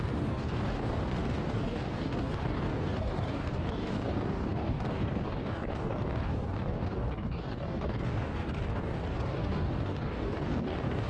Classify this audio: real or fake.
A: fake